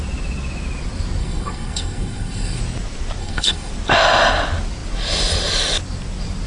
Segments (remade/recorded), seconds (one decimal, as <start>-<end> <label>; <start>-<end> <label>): 0.0-1.2 recorded; 1.2-2.6 remade; 2.6-3.2 recorded; 3.2-3.7 remade; 3.7-6.5 recorded